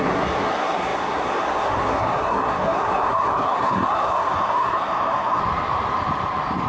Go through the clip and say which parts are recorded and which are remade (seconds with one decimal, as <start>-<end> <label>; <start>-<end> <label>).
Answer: 0.0-5.4 remade; 5.4-6.7 recorded